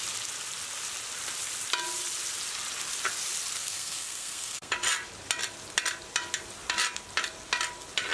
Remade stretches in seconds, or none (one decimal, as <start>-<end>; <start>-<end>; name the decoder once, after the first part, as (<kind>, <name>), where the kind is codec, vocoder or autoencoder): 3.6-4.7 (codec, SNAC)